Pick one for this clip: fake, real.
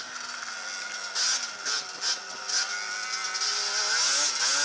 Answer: real